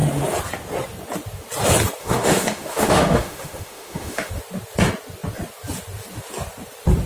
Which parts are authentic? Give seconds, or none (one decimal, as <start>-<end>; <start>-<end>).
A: 0.0-2.0; 4.3-7.1